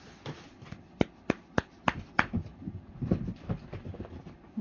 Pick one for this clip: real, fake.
real